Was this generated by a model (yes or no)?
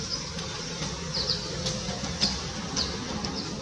no